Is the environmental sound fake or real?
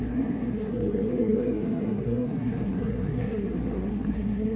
fake